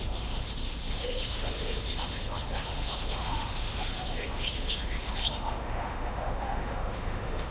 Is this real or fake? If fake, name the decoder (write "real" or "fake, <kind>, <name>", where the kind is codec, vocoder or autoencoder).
fake, autoencoder, DAC-VAE